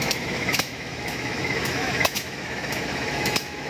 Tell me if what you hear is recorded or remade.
remade